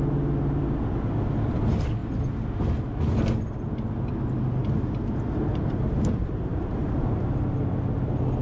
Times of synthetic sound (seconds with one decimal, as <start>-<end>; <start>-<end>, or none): 5.5-7.2